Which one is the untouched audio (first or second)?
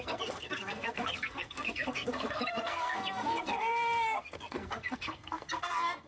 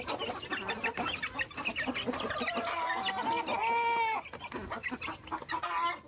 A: second